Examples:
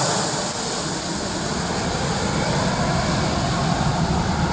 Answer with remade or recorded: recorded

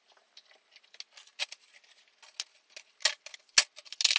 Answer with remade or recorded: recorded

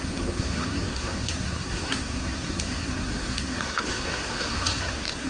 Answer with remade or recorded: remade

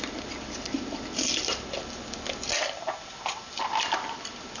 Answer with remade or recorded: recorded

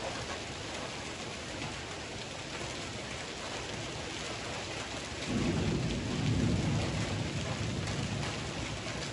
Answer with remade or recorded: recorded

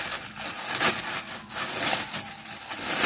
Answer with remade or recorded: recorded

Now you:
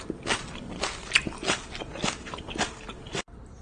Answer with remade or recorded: recorded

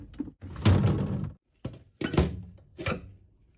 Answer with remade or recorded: recorded